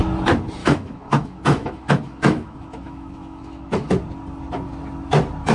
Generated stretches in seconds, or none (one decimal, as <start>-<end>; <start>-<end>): 0.6-3.9